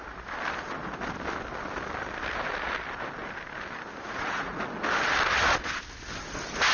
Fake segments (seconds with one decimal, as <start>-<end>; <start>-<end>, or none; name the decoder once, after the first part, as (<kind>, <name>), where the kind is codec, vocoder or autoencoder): 4.0-4.6 (vocoder, Vocos)